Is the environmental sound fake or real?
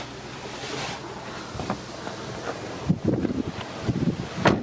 real